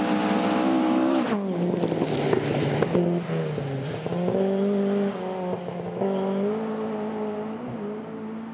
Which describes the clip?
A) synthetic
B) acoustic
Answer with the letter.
B